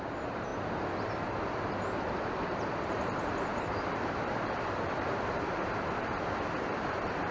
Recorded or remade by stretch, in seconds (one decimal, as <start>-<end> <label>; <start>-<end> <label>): 0.0-0.5 remade; 0.5-2.3 recorded; 2.3-7.3 remade